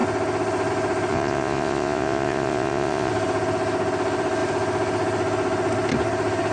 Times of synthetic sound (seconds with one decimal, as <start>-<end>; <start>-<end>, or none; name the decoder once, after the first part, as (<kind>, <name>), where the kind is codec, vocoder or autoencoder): 1.1-3.1 (vocoder, Vocos)